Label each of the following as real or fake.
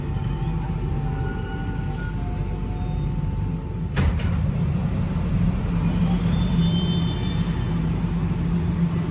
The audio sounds real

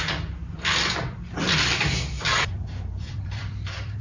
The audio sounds fake